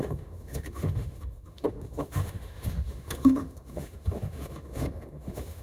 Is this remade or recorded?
remade